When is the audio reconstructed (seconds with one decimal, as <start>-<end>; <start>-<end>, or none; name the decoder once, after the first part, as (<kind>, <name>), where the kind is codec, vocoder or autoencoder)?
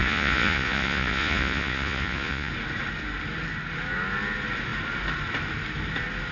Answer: 0.0-2.5 (vocoder, Vocos)